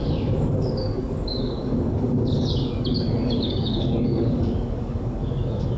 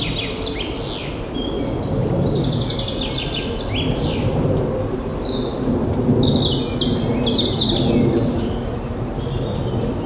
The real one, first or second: second